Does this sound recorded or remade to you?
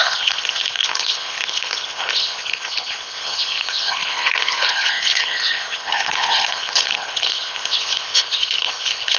remade